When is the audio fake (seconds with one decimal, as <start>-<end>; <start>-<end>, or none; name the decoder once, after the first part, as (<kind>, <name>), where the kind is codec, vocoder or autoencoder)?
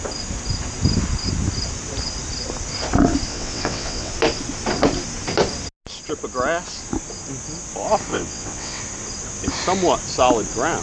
3.3-4.1 (vocoder, WaveNeXt); 8.1-8.8